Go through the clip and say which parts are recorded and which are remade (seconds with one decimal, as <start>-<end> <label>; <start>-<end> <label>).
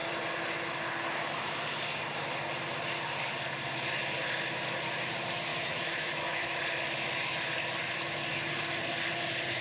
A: 0.0-5.5 recorded; 5.5-6.6 remade; 6.6-9.6 recorded